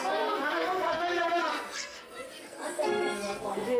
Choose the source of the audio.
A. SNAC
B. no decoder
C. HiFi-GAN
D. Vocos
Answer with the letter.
A